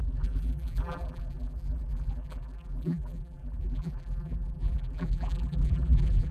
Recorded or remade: remade